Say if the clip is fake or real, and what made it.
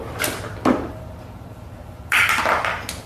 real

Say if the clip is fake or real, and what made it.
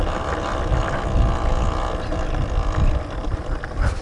real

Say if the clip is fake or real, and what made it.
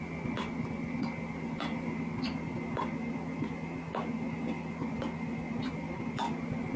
real